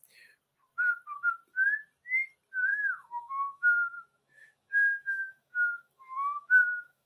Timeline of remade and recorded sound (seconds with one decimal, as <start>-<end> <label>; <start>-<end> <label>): 0.0-2.7 recorded; 2.7-7.1 remade